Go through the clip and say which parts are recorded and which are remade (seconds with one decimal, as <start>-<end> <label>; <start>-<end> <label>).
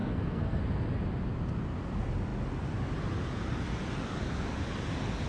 0.0-0.6 remade; 0.6-5.3 recorded